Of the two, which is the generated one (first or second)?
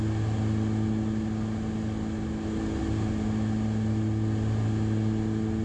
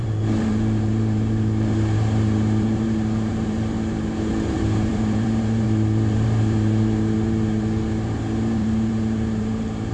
second